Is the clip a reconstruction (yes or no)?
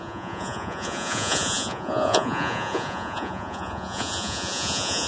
yes